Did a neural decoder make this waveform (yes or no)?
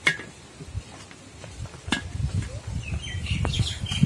no